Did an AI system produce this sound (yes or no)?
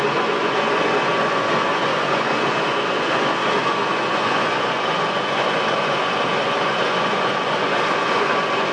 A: yes